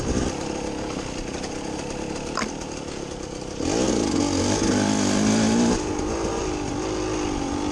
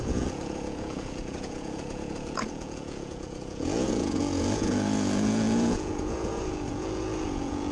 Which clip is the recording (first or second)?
first